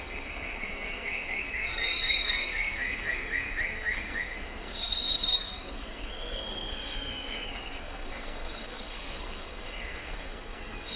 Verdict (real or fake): fake